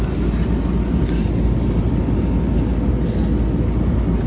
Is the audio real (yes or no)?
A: yes